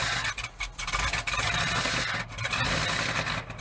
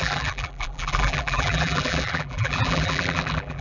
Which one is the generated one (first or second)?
second